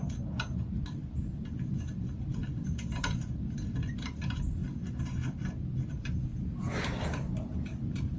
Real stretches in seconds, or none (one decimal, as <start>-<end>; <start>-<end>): 0.0-2.4; 3.4-8.2